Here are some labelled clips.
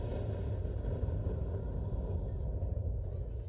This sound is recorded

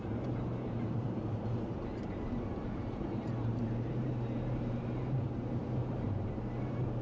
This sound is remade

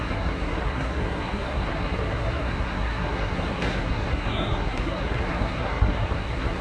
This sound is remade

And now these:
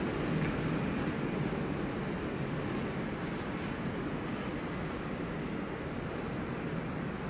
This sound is recorded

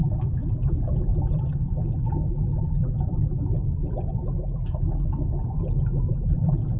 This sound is recorded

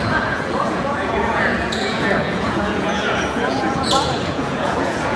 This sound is remade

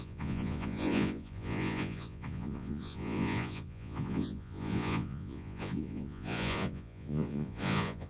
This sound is remade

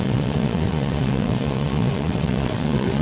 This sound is remade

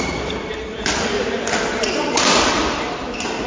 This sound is recorded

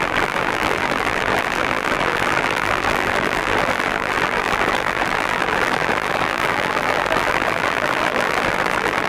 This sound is remade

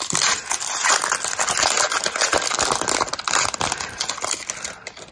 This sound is remade